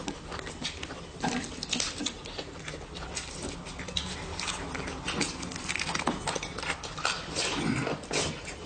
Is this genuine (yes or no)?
yes